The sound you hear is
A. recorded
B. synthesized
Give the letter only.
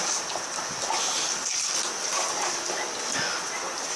A